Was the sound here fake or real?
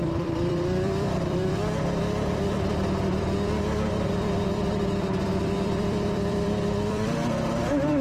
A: fake